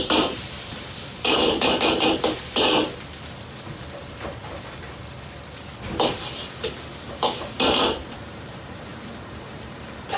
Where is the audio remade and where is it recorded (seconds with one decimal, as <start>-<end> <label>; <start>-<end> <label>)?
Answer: 0.0-2.8 remade; 2.8-7.1 recorded; 7.1-10.2 remade